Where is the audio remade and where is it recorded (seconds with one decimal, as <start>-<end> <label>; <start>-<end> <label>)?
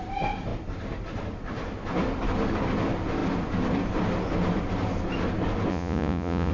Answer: 0.0-5.7 recorded; 5.7-6.5 remade